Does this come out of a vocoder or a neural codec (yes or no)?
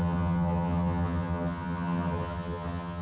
yes